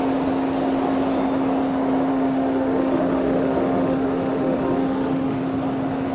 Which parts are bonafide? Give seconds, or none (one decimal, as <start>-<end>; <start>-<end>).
0.0-2.1; 5.4-6.1